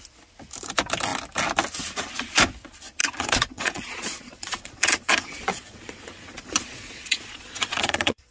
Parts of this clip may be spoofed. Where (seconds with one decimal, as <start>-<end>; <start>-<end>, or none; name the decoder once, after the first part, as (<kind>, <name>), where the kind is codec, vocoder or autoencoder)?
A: 3.0-8.3 (vocoder, Vocos)